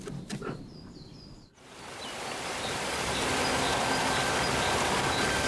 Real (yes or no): no